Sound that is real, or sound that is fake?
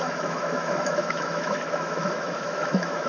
fake